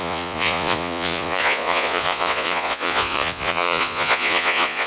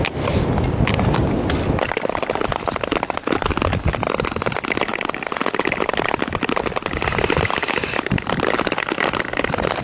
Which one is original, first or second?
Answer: second